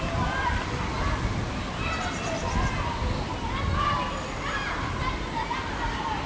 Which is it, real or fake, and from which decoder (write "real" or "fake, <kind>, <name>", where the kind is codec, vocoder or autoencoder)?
real